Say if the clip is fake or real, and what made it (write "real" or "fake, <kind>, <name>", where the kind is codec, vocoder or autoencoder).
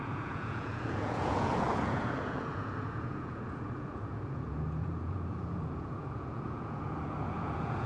fake, vocoder, Vocos